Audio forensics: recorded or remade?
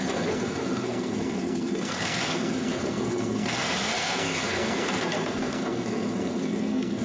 remade